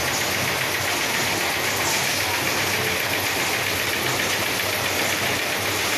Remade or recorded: recorded